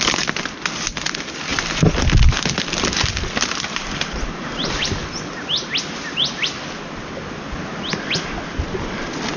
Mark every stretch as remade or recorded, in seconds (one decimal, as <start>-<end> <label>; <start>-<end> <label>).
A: 0.0-9.4 recorded